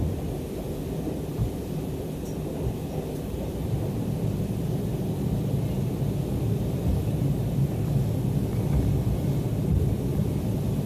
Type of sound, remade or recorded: recorded